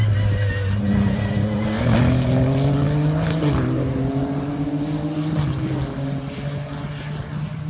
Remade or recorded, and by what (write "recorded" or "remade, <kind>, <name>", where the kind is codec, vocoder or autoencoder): recorded